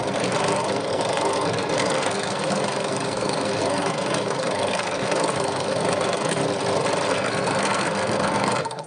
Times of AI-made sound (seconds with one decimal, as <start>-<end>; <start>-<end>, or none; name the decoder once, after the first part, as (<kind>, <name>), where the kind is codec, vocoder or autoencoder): 0.0-6.4 (codec, SNAC); 7.1-8.9